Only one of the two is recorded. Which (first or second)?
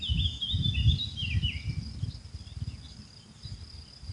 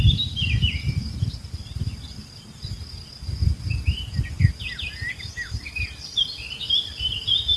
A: first